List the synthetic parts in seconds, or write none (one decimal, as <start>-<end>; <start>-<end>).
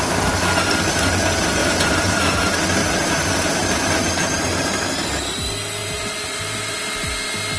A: 1.6-2.4; 2.8-4.6; 5.8-6.9